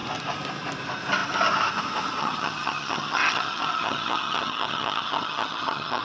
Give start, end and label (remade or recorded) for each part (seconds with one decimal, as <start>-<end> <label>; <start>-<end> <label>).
0.0-2.2 recorded; 2.2-6.0 remade